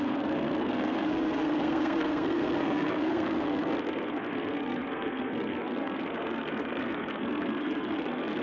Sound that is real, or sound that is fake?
fake